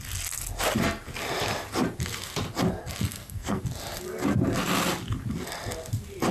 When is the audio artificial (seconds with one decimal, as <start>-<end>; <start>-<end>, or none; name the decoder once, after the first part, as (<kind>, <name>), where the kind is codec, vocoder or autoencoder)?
2.8-3.6 (codec, SNAC)